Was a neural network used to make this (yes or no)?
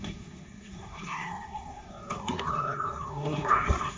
yes